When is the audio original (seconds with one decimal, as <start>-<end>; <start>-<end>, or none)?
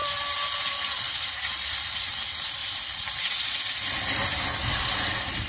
0.0-5.5